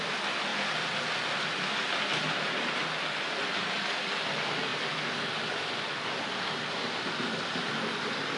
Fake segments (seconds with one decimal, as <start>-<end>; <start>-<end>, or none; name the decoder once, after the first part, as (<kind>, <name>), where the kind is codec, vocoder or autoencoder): 0.5-1.0 (vocoder, BigVGAN v2)